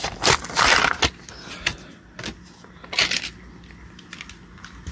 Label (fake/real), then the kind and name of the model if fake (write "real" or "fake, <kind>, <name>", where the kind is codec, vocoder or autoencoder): real